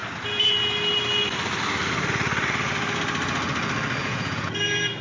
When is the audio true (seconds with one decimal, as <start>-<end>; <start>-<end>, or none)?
0.0-4.0; 4.6-5.0